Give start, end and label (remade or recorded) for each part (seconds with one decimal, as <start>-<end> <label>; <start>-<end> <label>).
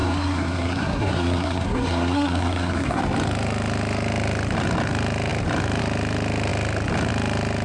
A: 0.0-3.0 remade; 3.0-7.6 recorded